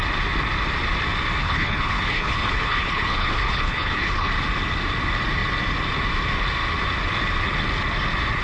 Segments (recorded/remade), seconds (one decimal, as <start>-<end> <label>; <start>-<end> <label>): 0.0-1.4 recorded; 1.4-4.3 remade; 4.3-8.4 recorded